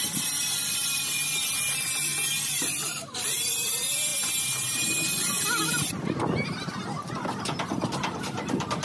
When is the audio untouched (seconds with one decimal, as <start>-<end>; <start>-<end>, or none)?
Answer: 4.1-7.4